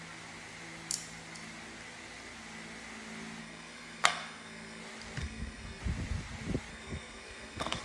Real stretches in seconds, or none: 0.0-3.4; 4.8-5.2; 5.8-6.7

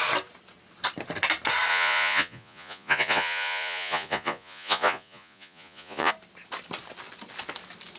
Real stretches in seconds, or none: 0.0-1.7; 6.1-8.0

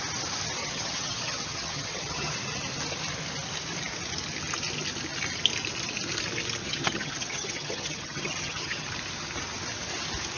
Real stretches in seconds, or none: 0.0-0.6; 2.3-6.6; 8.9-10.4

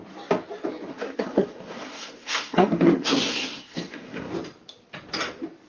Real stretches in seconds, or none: 0.0-0.9; 4.3-5.7

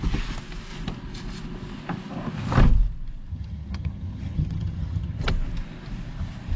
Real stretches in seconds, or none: 0.0-3.3; 5.2-6.6

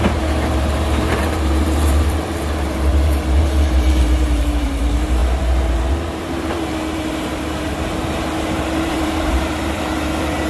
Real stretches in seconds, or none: none

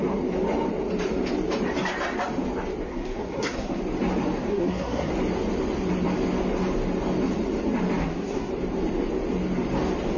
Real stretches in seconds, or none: 0.0-2.9; 3.8-4.5; 5.1-8.0; 8.5-10.2

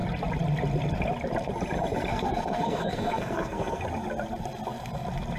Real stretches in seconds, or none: 0.0-2.1; 3.8-5.4